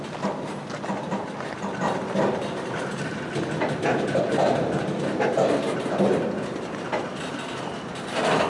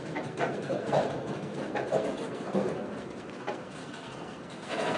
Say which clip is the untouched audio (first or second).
first